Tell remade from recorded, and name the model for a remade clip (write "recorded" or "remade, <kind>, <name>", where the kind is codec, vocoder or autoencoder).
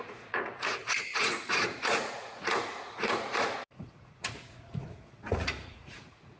remade, vocoder, Vocos